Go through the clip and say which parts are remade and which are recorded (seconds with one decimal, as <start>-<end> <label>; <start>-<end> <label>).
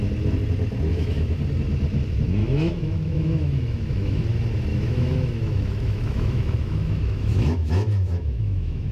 0.0-0.9 recorded; 0.9-1.4 remade; 1.4-2.4 recorded; 2.4-4.2 remade; 4.2-4.7 recorded; 4.7-8.9 remade